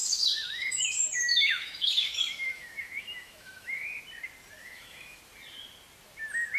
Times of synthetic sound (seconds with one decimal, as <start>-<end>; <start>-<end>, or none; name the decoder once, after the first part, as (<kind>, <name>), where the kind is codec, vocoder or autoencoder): 0.0-4.0 (autoencoder, DAC-VAE); 4.6-5.2